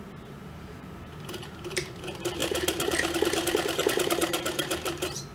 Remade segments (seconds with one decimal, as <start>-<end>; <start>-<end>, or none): 0.0-5.3